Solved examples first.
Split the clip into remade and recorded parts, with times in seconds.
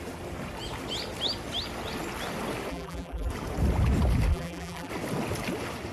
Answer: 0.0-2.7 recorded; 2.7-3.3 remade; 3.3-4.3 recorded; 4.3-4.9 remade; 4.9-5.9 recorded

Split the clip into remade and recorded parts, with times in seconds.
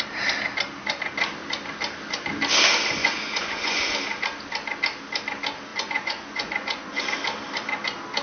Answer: 0.0-3.0 recorded; 3.0-3.9 remade; 3.9-5.7 recorded; 5.7-7.0 remade; 7.0-8.2 recorded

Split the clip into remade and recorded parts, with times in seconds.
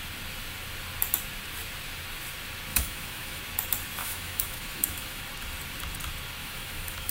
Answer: 0.0-2.7 recorded; 2.7-3.4 remade; 3.4-4.0 recorded; 4.0-5.2 remade; 5.2-6.4 recorded; 6.4-7.1 remade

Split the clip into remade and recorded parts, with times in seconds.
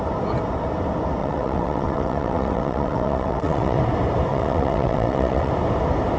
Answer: 0.0-1.2 recorded; 1.2-3.8 remade; 3.8-4.3 recorded; 4.3-5.5 remade; 5.5-6.2 recorded